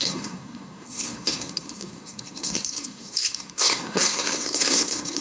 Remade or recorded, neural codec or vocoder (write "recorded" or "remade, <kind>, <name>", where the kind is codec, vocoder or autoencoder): remade, codec, SNAC